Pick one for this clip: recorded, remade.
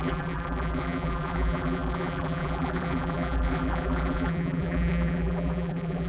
remade